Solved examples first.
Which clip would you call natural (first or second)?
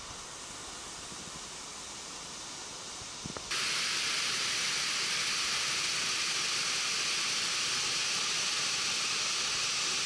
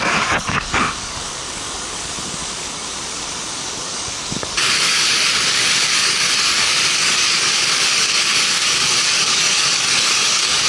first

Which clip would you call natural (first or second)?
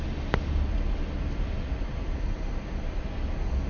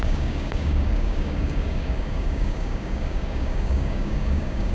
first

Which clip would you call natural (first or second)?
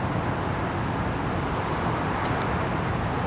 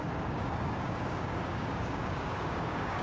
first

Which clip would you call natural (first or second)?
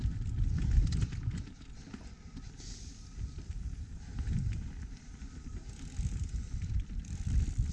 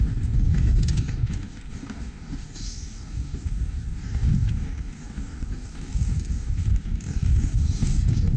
first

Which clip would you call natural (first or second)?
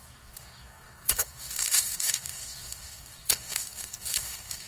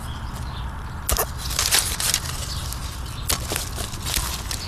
second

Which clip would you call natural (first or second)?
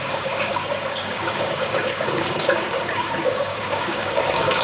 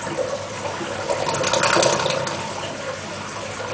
second